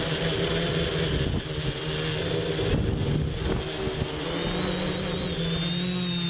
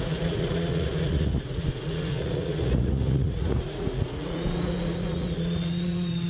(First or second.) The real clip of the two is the first